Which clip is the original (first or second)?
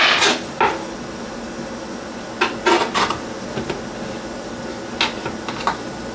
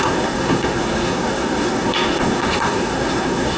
first